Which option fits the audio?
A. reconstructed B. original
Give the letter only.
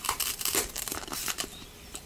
A